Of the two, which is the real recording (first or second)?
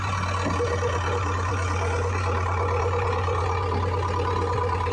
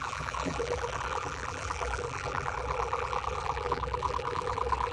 first